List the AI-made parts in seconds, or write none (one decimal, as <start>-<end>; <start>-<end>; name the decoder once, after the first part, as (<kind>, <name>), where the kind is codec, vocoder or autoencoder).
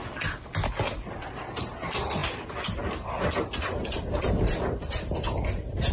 none